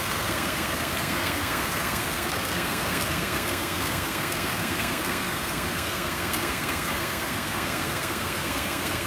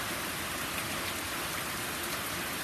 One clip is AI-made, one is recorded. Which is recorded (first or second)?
second